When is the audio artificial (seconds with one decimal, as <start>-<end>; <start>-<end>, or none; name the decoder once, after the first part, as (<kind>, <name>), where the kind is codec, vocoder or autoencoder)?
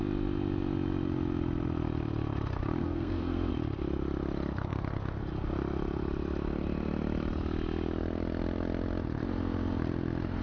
2.8-3.5 (codec, SNAC)